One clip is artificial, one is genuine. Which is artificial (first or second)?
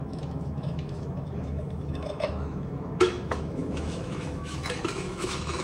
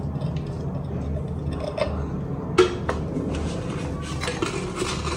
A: first